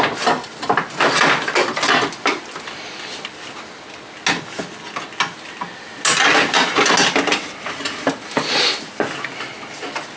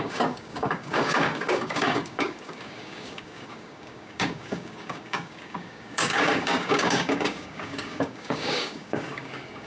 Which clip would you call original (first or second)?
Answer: first